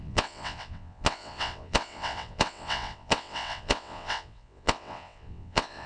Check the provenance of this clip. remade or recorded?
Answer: remade